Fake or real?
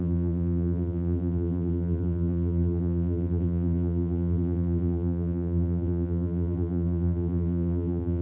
fake